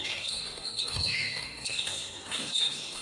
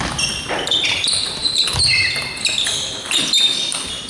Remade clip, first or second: first